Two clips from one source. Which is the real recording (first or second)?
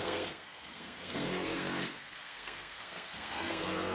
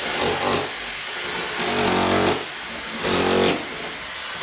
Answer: second